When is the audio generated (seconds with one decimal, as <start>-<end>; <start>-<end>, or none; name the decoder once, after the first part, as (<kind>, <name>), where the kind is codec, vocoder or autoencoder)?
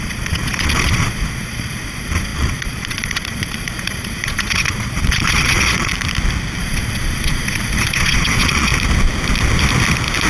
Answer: 0.0-5.9 (vocoder, Vocos); 6.6-8.7